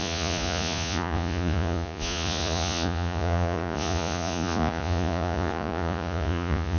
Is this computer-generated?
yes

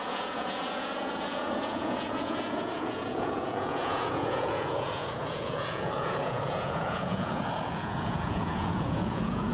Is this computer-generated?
yes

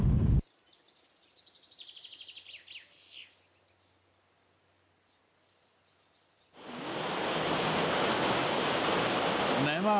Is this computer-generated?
no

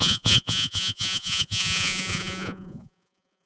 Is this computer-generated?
yes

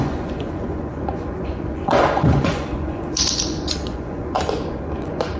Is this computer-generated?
yes